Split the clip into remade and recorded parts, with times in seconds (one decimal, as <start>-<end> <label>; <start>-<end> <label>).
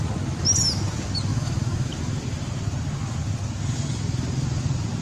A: 0.0-1.3 recorded; 1.3-1.9 remade; 1.9-5.0 recorded